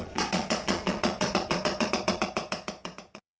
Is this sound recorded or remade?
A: remade